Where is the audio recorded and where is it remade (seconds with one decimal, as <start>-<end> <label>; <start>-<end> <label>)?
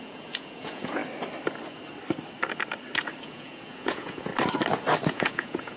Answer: 0.0-1.0 remade; 1.0-3.2 recorded; 3.2-4.3 remade; 4.3-5.1 recorded; 5.1-5.8 remade